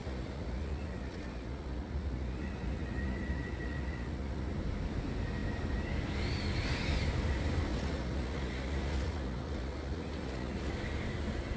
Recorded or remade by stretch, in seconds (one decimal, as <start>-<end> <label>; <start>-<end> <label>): 0.0-4.5 remade; 4.5-7.7 recorded; 7.7-10.7 remade; 10.7-11.6 recorded